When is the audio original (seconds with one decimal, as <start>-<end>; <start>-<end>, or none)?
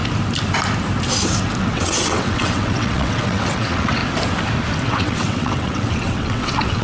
0.0-1.6; 4.0-4.8